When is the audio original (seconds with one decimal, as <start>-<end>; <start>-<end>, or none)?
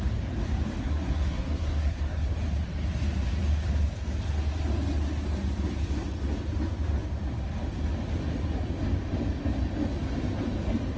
0.0-0.8; 2.3-11.0